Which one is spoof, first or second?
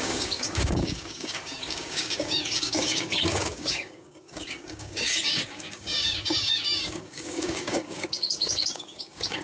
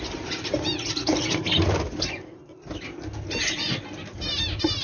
first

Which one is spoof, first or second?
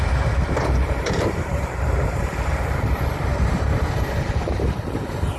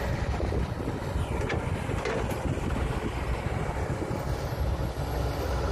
first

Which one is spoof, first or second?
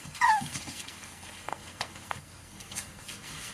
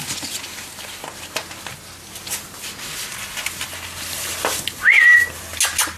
first